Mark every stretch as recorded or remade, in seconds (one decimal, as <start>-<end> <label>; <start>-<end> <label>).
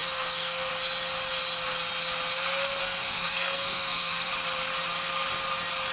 0.0-0.7 remade; 0.7-2.8 recorded; 2.8-4.3 remade; 4.3-5.9 recorded